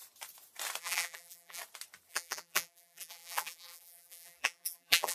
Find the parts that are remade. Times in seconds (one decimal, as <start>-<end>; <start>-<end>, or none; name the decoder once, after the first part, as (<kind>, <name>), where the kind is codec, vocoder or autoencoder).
0.8-1.6 (vocoder, BigVGAN v2); 2.1-5.1